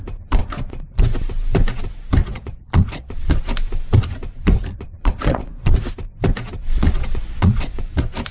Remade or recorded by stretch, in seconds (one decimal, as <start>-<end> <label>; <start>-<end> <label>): 0.0-0.4 recorded; 0.4-1.0 remade; 1.0-2.2 recorded; 2.2-3.5 remade; 3.5-4.7 recorded; 4.7-5.9 remade; 5.9-6.6 recorded; 6.6-7.8 remade; 7.8-8.3 recorded